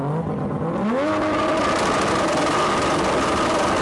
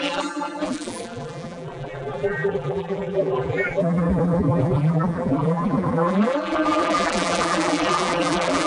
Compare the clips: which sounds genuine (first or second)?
first